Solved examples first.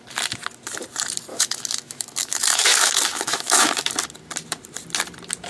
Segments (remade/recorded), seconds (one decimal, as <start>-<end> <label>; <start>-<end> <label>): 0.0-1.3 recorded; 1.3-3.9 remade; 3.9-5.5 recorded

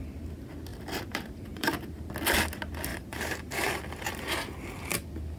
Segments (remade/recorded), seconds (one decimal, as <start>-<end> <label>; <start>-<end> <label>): 0.0-0.7 recorded; 0.7-2.1 remade; 2.1-2.9 recorded; 2.9-4.4 remade; 4.4-5.4 recorded

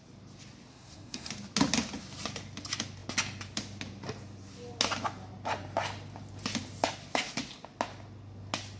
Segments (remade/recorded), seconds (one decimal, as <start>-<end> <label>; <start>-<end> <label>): 0.0-0.7 recorded; 0.7-1.3 remade; 1.3-8.8 recorded

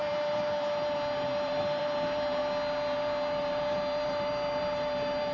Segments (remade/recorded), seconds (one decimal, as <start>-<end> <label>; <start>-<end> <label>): 0.0-2.4 remade; 2.4-3.4 recorded; 3.4-5.3 remade

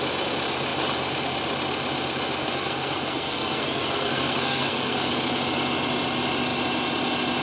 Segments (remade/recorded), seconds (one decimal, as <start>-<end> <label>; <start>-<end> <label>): 0.0-2.4 recorded; 2.4-5.1 remade; 5.1-7.4 recorded